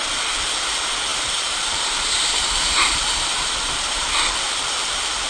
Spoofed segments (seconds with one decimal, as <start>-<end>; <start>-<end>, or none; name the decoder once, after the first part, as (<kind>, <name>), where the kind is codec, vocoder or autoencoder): 1.1-4.3 (vocoder, BigVGAN v2)